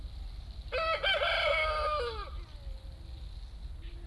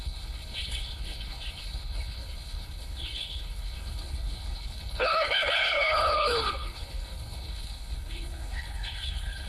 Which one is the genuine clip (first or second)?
first